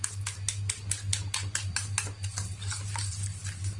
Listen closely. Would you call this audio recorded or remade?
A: recorded